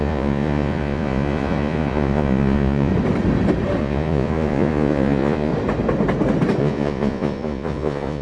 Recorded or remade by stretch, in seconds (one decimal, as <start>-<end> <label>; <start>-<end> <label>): 0.0-2.9 remade; 2.9-3.8 recorded; 3.8-5.5 remade; 5.5-6.6 recorded; 6.6-8.2 remade